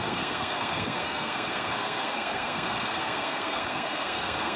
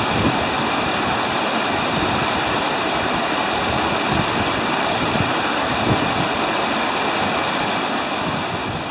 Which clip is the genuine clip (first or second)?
second